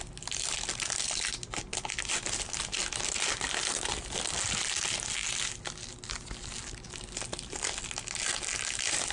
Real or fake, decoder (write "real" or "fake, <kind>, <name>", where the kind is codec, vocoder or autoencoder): real